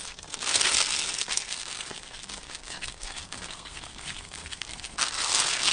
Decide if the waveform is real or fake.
fake